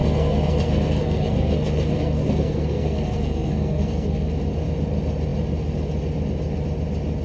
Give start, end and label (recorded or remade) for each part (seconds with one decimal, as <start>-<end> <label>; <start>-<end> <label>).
0.0-4.3 remade; 4.3-7.2 recorded